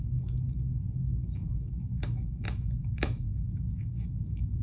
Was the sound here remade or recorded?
remade